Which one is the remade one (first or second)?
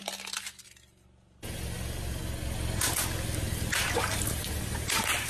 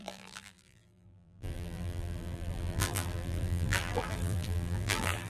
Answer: second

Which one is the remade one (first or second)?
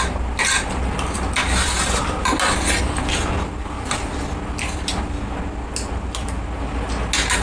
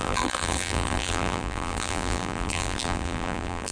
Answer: second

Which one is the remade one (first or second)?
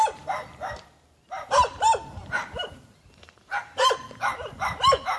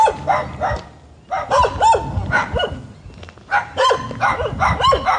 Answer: first